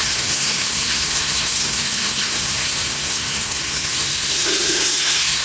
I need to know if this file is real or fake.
fake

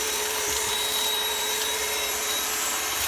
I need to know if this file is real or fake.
fake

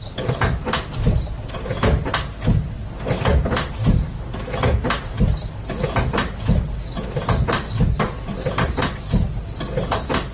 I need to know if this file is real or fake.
real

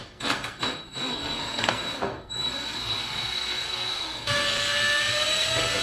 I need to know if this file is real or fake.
fake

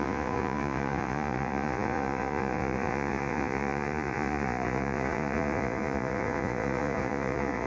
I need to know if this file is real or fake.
fake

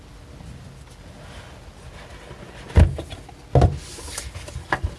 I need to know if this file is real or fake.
real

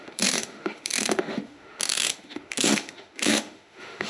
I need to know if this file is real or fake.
fake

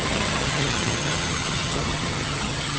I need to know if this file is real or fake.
fake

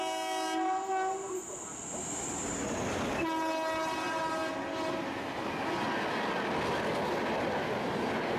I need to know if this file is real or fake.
real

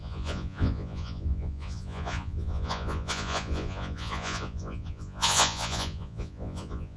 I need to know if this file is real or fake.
fake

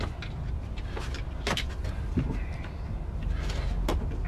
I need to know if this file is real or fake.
real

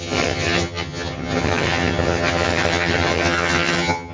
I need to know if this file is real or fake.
fake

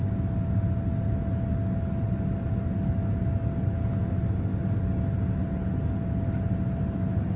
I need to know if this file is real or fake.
real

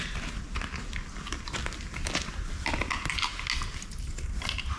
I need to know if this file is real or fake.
real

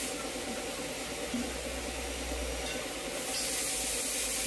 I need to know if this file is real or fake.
real